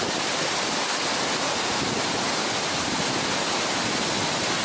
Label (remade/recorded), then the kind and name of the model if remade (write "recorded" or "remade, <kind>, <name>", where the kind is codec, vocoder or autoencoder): recorded